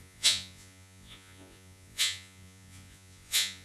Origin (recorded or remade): remade